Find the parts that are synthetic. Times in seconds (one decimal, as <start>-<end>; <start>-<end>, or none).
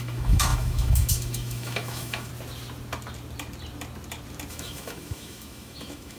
0.0-2.3; 4.5-6.2